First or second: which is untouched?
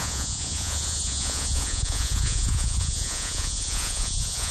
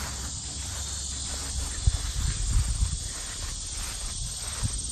second